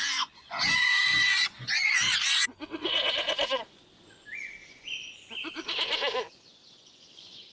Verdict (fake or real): fake